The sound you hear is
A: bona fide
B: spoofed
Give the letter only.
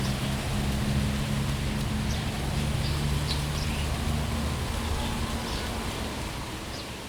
A